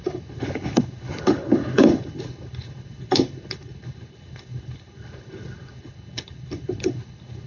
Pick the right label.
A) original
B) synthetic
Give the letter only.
B